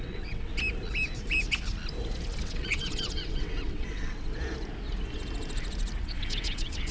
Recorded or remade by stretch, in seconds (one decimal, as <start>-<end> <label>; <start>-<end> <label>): 0.0-0.5 remade; 0.5-2.4 recorded; 2.4-4.3 remade; 4.3-6.0 recorded; 6.0-6.9 remade